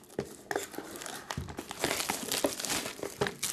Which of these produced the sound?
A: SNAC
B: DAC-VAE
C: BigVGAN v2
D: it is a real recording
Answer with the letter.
D